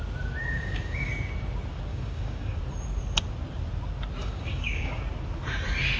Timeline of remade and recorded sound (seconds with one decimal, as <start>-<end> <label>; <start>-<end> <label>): 0.0-0.4 recorded; 0.4-1.1 remade; 1.1-1.9 recorded; 1.9-2.6 remade; 2.6-4.2 recorded; 4.2-5.0 remade; 5.0-6.0 recorded